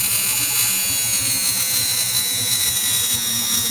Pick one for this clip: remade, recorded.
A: remade